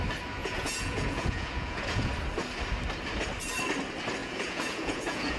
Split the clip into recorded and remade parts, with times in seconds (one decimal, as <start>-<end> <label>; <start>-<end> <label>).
0.0-0.4 recorded; 0.4-2.1 remade; 2.1-4.2 recorded; 4.2-5.4 remade